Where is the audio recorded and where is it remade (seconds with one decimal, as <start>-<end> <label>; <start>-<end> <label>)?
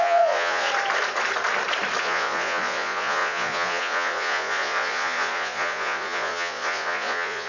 0.0-0.7 remade; 0.7-2.0 recorded; 2.0-7.5 remade